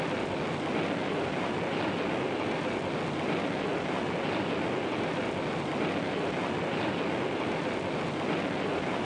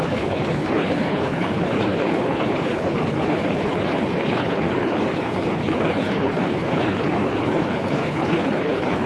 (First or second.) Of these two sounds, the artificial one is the second